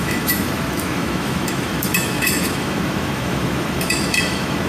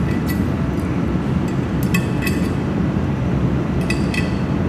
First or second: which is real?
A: second